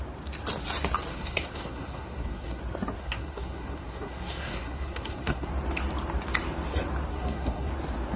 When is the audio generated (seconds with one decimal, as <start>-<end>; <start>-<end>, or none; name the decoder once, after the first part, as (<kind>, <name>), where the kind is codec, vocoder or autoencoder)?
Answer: 1.1-2.6 (codec, SNAC); 3.0-5.5; 7.1-7.7